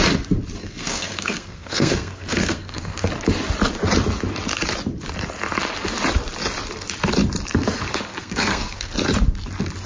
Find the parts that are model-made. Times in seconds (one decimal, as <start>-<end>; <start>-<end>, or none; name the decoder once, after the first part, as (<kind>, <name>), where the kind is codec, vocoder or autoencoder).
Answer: 0.6-3.1 (codec, SNAC); 8.2-8.9